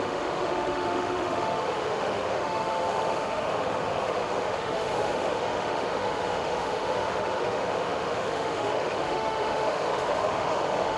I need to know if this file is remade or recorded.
remade